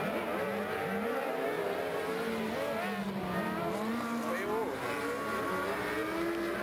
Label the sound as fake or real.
real